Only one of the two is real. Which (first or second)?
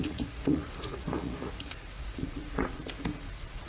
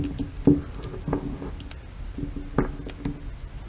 second